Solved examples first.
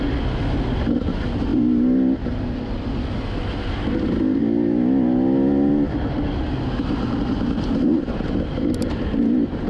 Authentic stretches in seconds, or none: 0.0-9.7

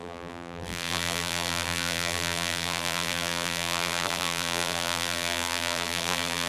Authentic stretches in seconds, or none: none

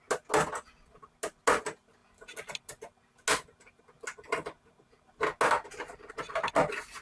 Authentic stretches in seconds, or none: 0.0-7.0

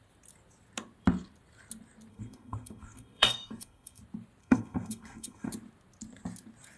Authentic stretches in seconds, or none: 0.0-2.1; 4.0-4.4; 5.5-6.8

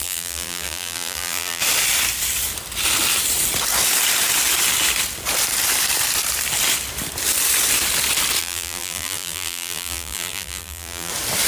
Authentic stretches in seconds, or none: 1.6-8.4; 11.1-11.5

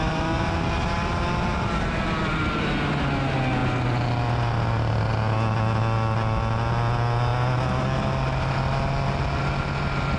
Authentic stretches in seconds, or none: 0.0-10.2